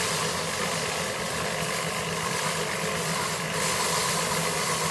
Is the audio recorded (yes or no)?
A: yes